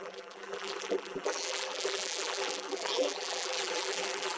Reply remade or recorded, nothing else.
remade